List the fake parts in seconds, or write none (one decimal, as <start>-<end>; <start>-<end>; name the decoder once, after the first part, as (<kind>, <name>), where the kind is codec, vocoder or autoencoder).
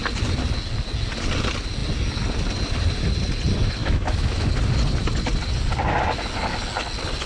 3.8-4.5 (autoencoder, DAC-VAE)